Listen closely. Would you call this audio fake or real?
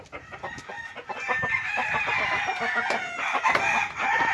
real